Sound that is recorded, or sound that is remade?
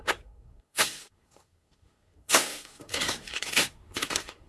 remade